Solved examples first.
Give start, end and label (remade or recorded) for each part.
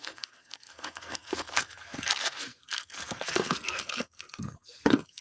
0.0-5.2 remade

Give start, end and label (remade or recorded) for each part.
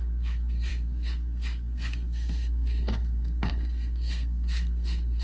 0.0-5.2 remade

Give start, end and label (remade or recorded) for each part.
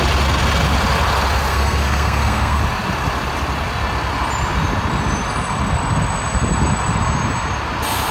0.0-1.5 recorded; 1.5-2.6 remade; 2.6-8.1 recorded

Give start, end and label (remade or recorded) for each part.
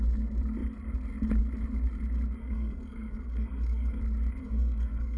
0.0-2.4 recorded; 2.4-4.0 remade; 4.0-4.4 recorded; 4.4-5.2 remade